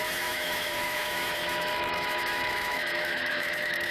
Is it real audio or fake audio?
fake